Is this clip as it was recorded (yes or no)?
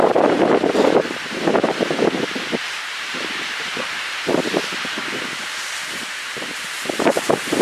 no